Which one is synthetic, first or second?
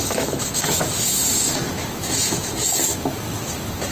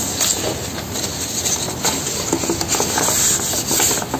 first